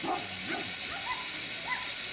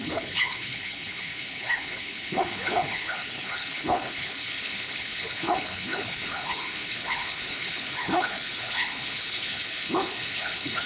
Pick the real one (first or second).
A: first